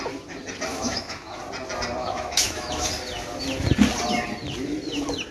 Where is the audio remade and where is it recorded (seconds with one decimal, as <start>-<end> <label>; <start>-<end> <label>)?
0.0-0.7 recorded; 0.7-1.4 remade; 1.4-2.0 recorded; 2.0-2.9 remade; 2.9-5.3 recorded